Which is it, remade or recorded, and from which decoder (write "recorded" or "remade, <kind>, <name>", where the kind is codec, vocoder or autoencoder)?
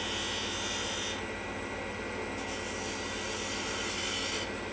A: recorded